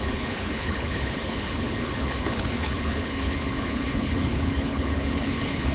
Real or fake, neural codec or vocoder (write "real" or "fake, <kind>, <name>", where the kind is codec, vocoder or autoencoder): fake, codec, HILCodec